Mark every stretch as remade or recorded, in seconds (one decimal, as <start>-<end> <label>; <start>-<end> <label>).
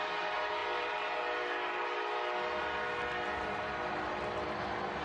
0.0-5.0 recorded